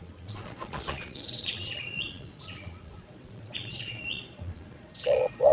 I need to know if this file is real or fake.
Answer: fake